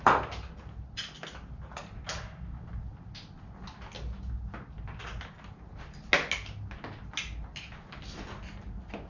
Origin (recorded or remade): recorded